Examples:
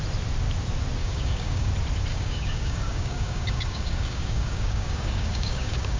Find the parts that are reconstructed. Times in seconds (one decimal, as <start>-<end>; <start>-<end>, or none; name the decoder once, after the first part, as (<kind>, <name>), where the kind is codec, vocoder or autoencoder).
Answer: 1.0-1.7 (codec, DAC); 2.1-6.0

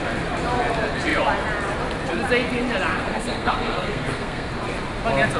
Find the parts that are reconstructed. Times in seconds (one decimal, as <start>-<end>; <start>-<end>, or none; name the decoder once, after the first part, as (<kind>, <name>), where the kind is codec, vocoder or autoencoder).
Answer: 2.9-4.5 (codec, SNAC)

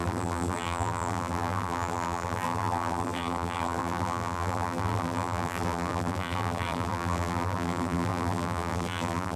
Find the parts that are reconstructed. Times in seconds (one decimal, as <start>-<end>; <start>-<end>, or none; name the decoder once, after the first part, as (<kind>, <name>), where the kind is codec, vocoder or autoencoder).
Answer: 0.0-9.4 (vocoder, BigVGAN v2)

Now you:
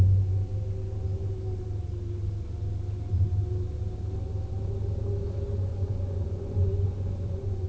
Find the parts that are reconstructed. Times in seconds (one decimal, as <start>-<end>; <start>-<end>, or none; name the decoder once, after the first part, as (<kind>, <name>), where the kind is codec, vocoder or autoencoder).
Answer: 5.7-7.7 (vocoder, Vocos)